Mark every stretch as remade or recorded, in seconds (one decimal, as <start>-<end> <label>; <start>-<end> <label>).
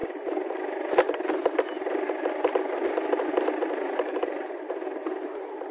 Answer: 0.0-5.7 recorded